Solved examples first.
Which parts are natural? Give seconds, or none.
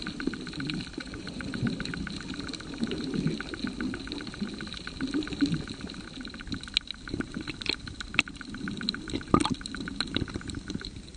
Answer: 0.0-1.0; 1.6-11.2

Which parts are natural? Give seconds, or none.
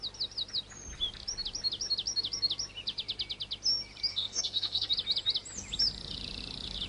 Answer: 0.0-4.1; 4.9-6.9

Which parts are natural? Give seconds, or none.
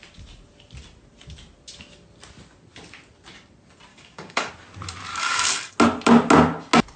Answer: 0.0-3.9; 4.5-5.1; 5.7-7.0